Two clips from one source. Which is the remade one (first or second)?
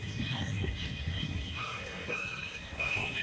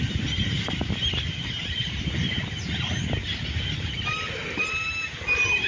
first